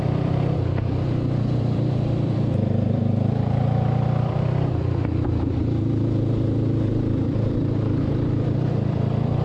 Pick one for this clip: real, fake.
fake